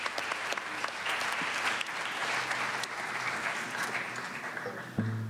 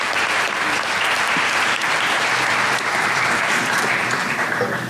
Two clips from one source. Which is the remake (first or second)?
second